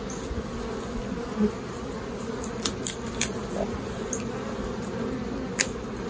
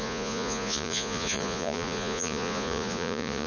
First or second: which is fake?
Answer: second